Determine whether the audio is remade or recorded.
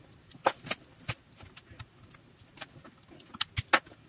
recorded